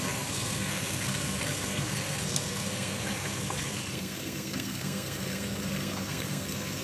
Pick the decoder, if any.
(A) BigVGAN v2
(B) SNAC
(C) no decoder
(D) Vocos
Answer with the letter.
B